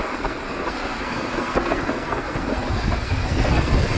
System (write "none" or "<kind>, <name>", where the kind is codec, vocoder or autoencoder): codec, SNAC